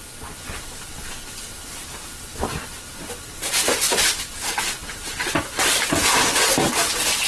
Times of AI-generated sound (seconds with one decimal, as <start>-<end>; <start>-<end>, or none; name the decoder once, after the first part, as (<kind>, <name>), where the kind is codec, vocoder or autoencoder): none